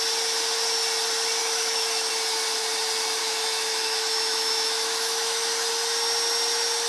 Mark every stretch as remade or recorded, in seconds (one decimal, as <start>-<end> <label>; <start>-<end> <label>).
0.0-1.4 recorded; 1.4-2.1 remade; 2.1-3.2 recorded; 3.2-5.7 remade; 5.7-6.9 recorded